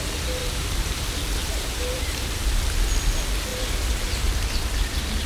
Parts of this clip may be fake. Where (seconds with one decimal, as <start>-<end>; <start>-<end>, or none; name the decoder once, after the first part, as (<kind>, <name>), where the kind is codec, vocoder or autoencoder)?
0.4-1.0 (vocoder, BigVGAN v2); 1.4-2.6; 3.5-4.3